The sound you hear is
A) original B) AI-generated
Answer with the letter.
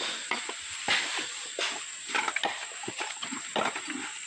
A